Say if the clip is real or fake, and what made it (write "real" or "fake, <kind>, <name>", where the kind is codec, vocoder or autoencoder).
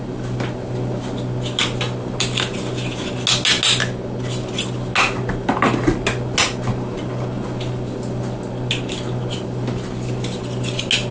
real